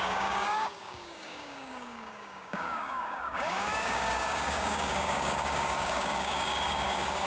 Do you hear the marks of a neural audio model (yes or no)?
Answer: yes